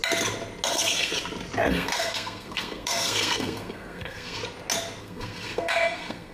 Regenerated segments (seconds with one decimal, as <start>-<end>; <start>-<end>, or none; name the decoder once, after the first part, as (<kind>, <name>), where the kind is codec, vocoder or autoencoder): 0.7-1.1 (codec, SNAC); 1.7-4.4; 5.0-6.3